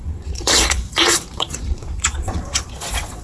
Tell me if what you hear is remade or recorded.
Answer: remade